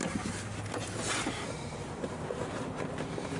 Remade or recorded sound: recorded